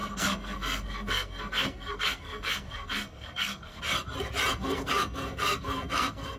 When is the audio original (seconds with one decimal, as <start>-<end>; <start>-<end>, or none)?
3.8-4.5

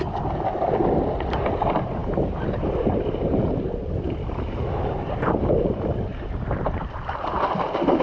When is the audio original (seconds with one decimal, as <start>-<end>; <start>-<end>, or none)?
0.0-6.1; 7.4-8.0

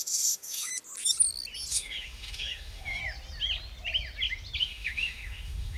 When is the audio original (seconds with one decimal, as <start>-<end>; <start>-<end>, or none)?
0.7-1.7; 3.0-4.6

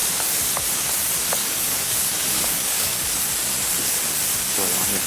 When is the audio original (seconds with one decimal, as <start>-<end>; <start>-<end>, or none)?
0.0-1.4; 3.2-5.1

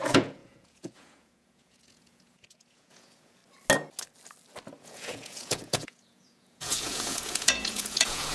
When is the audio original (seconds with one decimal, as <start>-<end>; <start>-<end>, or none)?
3.4-4.8

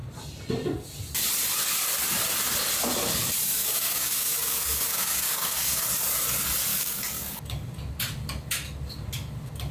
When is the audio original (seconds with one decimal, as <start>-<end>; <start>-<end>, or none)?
0.0-3.6; 5.8-6.7; 7.7-9.7

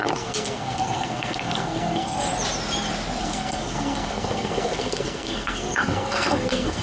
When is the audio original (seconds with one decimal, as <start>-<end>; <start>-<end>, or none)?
2.3-3.2

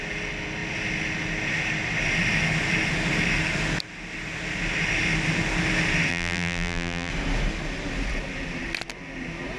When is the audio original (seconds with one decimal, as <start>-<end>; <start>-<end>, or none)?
0.0-6.1; 7.1-9.6